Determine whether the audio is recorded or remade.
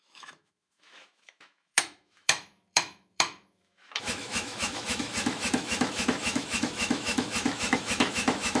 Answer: remade